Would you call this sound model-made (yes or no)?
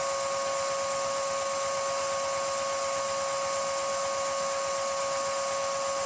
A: no